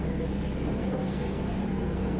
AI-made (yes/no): yes